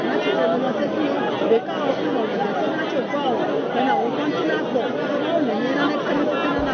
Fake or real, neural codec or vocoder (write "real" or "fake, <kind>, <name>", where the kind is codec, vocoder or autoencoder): real